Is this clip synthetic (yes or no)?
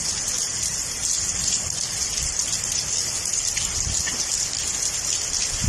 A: no